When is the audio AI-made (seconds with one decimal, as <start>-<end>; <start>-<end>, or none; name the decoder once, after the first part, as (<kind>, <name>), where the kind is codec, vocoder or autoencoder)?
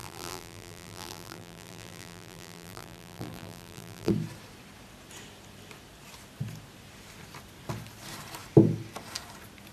0.0-4.1 (vocoder, BigVGAN v2)